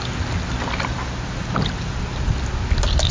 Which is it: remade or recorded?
recorded